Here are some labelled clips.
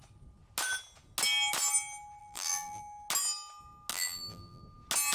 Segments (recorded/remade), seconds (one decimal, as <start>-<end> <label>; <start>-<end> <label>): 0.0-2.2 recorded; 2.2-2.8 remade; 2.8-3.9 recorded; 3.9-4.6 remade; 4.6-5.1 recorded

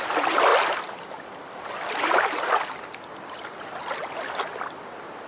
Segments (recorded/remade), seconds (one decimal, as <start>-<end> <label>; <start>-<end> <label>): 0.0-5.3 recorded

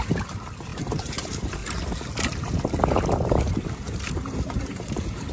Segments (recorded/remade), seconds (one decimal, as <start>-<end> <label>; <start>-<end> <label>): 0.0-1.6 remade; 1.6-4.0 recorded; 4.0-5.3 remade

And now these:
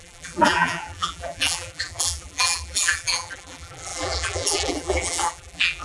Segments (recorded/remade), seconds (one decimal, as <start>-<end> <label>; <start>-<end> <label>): 0.0-5.8 remade